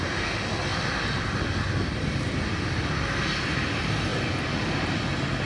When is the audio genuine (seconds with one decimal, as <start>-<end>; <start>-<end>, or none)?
0.0-5.5